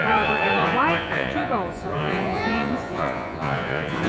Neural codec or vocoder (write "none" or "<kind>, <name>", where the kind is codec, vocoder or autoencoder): vocoder, Vocos